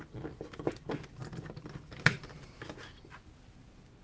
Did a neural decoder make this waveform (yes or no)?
no